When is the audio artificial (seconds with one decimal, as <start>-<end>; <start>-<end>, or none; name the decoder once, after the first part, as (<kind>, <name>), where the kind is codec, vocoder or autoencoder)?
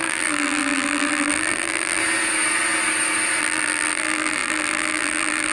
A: 0.0-2.0 (vocoder, BigVGAN v2); 3.4-5.5